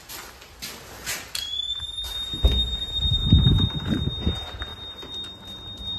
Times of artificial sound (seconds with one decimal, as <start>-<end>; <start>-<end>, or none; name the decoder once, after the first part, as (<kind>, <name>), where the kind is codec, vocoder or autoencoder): 3.2-3.9 (vocoder, BigVGAN v2)